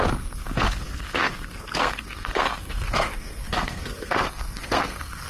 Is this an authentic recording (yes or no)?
no